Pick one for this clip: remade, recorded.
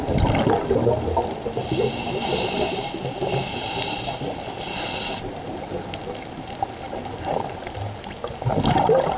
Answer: recorded